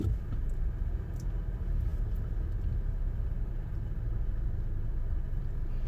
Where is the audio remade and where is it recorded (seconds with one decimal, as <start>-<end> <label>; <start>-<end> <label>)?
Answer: 0.0-5.9 recorded